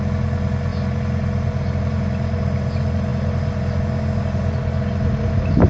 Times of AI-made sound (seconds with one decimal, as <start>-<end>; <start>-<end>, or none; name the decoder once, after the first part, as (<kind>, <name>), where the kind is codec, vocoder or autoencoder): none